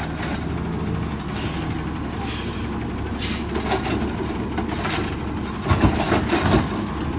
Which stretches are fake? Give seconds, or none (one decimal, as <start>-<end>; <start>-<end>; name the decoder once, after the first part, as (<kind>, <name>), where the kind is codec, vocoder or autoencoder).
none